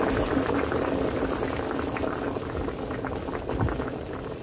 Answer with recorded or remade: recorded